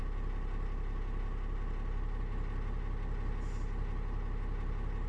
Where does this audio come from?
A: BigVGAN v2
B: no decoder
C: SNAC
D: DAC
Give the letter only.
B